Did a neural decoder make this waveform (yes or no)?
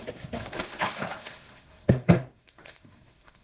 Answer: yes